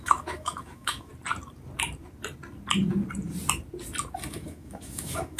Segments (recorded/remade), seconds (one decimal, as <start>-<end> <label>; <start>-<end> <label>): 0.0-1.1 remade; 1.1-4.3 recorded; 4.3-5.4 remade